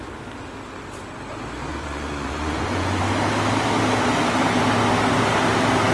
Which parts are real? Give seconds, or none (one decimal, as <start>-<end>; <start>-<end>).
0.0-1.7; 3.0-5.9